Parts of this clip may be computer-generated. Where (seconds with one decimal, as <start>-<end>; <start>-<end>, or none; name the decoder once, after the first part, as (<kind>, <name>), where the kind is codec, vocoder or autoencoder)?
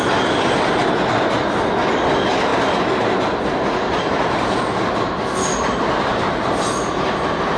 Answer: none